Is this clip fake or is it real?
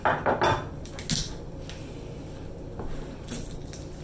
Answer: real